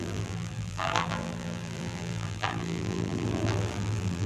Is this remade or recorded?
remade